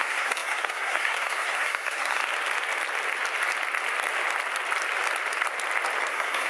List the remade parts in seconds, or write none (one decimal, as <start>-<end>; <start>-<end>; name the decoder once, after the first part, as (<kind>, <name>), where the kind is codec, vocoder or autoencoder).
0.0-2.2 (codec, SNAC); 6.1-6.5